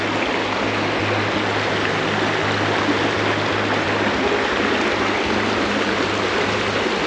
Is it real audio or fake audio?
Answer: real